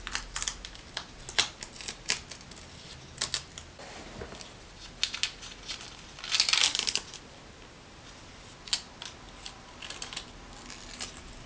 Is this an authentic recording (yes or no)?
yes